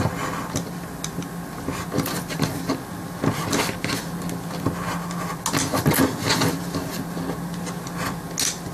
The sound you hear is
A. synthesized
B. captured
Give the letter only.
B